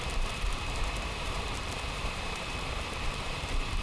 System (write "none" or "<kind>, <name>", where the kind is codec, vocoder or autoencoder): vocoder, BigVGAN v2